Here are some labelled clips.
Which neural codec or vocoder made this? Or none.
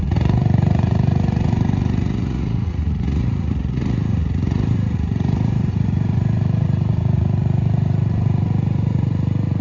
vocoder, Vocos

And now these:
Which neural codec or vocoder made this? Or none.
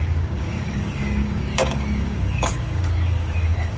codec, DAC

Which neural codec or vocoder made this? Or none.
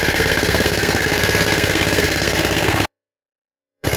codec, SNAC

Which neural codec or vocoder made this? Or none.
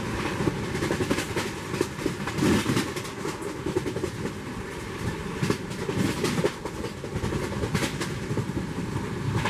none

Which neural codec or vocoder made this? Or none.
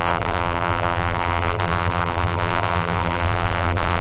vocoder, BigVGAN v2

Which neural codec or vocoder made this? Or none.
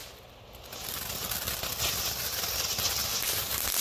none